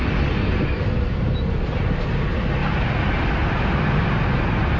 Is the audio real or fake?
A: real